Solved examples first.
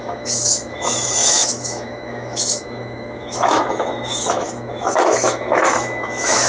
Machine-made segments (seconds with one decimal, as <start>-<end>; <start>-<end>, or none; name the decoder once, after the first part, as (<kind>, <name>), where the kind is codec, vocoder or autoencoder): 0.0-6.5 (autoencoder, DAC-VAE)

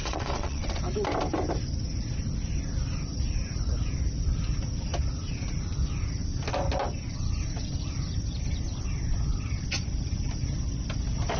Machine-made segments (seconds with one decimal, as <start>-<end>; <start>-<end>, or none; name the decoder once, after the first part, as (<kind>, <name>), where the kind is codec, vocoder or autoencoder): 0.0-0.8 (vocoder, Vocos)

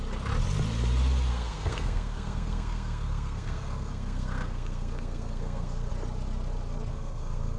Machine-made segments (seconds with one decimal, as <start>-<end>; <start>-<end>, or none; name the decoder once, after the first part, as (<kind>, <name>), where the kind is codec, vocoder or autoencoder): 1.3-5.9 (codec, SNAC); 6.9-7.6

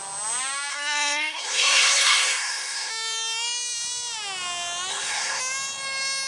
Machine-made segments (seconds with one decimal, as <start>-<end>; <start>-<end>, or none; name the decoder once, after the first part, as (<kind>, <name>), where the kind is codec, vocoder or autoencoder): 0.7-2.9 (codec, SNAC); 4.9-5.4